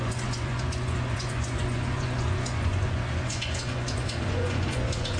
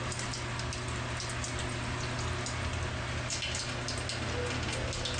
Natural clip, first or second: second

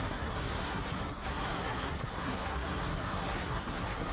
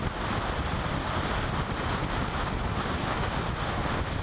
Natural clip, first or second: second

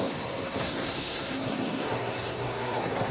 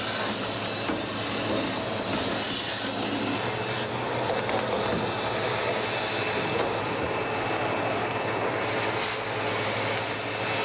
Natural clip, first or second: second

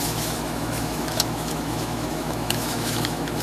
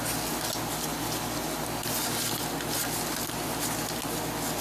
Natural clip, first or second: second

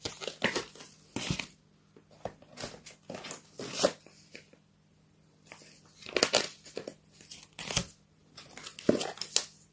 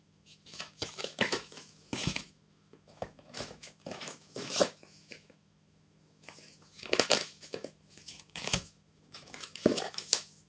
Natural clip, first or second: first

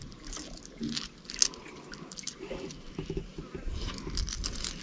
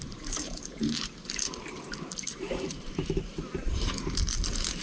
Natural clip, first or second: first